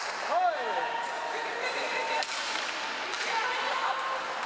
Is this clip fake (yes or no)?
no